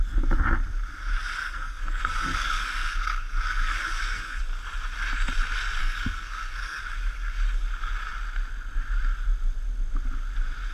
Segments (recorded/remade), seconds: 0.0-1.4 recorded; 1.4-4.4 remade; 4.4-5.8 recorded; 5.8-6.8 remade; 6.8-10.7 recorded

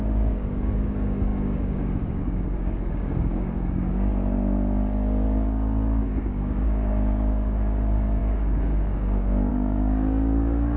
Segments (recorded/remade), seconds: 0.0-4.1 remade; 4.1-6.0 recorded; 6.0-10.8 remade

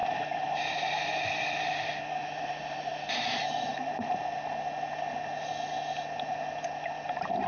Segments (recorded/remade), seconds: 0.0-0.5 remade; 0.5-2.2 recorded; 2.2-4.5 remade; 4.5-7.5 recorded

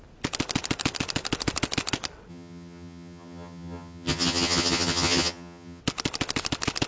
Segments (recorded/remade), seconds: 0.0-2.3 recorded; 2.3-5.8 remade; 5.8-6.9 recorded

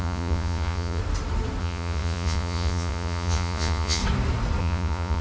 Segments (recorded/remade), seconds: 0.0-1.0 remade; 1.0-1.6 recorded; 1.6-4.0 remade; 4.0-4.6 recorded; 4.6-5.2 remade

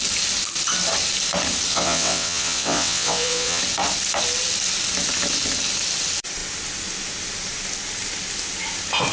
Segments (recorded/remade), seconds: 0.0-1.7 recorded; 1.7-3.6 remade; 3.6-9.1 recorded

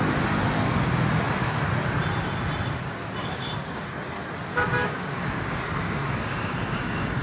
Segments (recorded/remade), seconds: 0.0-3.2 recorded; 3.2-3.8 remade; 3.8-4.5 recorded; 4.5-5.6 remade; 5.6-6.0 recorded; 6.0-7.2 remade